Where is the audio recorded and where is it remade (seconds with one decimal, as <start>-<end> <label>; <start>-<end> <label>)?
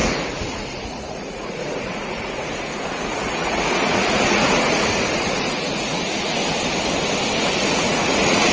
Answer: 0.0-6.4 remade; 6.4-7.4 recorded; 7.4-8.5 remade